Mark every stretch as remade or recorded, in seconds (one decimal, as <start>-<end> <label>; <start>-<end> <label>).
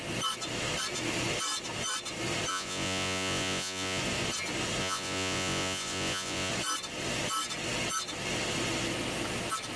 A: 0.0-2.5 recorded; 2.5-4.0 remade; 4.0-4.8 recorded; 4.8-6.5 remade; 6.5-9.8 recorded